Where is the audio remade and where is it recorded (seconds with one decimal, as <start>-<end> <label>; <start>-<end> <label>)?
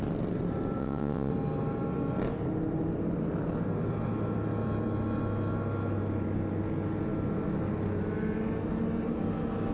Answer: 0.0-0.8 recorded; 0.8-1.3 remade; 1.3-9.7 recorded